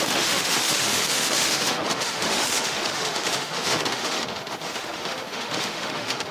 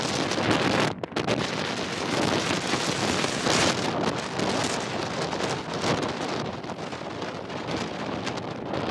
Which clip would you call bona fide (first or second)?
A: second